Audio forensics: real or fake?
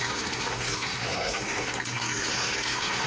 fake